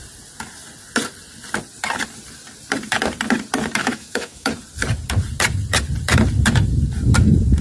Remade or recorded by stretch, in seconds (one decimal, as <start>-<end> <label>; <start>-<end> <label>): 0.0-3.8 recorded; 3.8-4.5 remade; 4.5-7.6 recorded